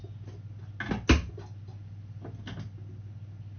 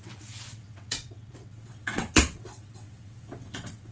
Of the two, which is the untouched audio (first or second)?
first